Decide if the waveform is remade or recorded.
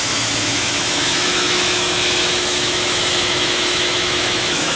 remade